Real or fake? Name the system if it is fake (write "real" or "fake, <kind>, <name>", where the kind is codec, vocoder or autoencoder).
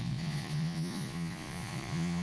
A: fake, vocoder, Vocos